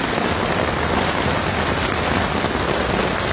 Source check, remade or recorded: recorded